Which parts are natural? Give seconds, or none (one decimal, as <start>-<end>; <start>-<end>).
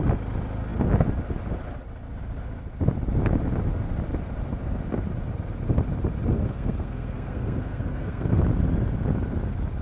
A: 0.0-6.3; 8.4-9.8